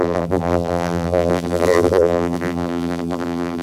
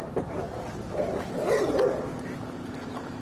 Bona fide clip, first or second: second